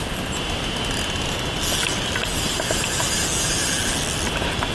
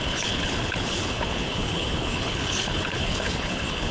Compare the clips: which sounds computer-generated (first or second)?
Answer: second